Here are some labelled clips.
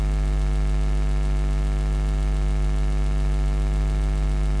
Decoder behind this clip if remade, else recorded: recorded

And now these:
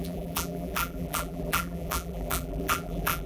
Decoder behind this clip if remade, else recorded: remade, vocoder, BigVGAN v2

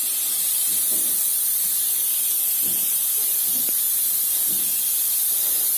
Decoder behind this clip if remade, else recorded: remade, vocoder, BigVGAN v2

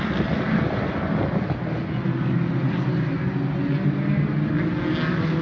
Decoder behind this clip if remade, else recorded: recorded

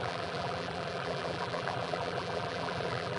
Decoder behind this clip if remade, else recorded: remade, vocoder, BigVGAN v2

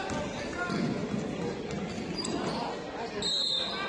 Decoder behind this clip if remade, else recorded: recorded